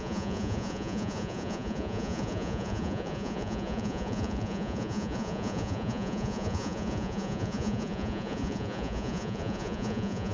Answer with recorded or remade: remade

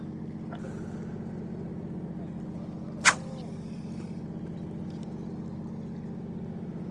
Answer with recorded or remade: recorded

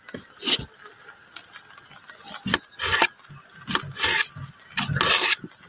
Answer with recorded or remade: recorded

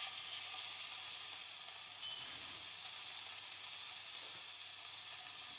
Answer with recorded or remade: recorded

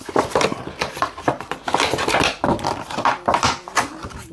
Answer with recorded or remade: recorded